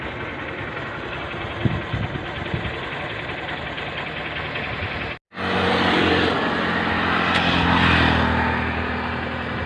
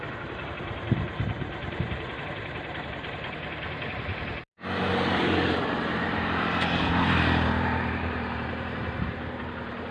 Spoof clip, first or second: second